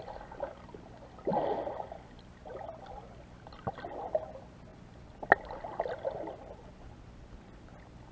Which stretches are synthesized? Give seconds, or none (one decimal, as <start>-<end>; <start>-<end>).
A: none